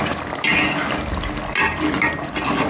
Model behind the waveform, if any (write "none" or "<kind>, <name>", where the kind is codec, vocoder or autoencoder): none